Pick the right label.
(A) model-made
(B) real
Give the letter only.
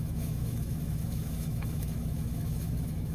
A